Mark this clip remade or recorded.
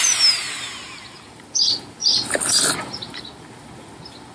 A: recorded